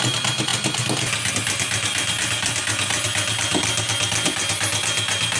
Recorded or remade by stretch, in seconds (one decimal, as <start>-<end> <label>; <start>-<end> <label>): 0.0-5.4 recorded